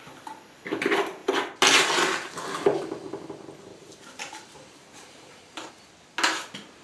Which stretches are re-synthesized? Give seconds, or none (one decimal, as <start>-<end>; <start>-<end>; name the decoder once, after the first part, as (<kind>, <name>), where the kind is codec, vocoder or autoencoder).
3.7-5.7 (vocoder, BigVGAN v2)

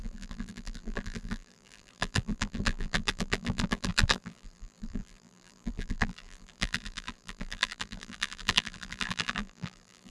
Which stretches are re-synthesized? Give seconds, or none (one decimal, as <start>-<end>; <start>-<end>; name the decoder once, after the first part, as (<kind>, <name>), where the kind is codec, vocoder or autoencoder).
0.0-10.1 (vocoder, BigVGAN v2)

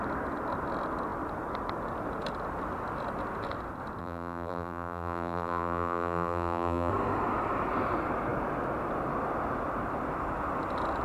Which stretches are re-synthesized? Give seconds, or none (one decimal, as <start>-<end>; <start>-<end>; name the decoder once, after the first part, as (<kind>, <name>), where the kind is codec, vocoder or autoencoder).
4.0-6.9 (vocoder, BigVGAN v2)

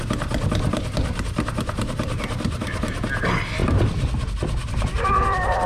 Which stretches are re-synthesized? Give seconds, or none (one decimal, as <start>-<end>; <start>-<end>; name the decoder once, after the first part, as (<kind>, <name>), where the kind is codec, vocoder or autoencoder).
3.6-5.7 (vocoder, BigVGAN v2)

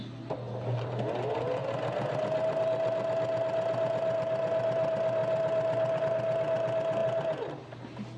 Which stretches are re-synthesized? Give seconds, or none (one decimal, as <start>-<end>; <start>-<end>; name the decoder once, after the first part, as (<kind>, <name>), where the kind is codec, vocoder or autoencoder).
7.0-8.2 (vocoder, BigVGAN v2)

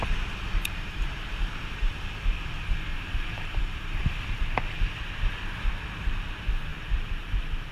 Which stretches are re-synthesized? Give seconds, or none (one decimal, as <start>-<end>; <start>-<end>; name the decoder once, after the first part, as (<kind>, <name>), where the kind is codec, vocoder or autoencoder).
0.6-1.3 (vocoder, BigVGAN v2); 2.9-4.6; 6.7-7.7

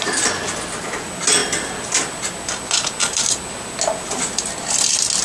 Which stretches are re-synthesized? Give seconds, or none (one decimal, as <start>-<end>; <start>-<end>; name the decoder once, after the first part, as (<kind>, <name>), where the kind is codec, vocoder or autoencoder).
none

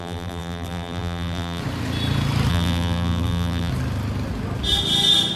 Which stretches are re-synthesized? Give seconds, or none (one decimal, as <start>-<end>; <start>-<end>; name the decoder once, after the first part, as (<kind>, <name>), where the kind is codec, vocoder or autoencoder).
0.0-1.6 (vocoder, BigVGAN v2); 2.5-3.7